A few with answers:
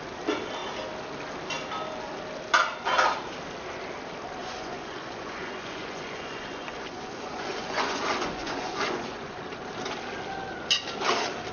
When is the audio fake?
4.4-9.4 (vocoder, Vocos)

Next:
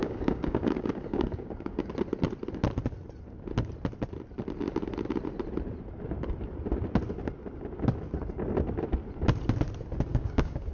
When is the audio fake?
0.0-1.9 (codec, DAC); 10.1-10.7

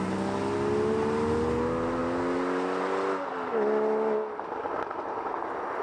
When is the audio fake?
none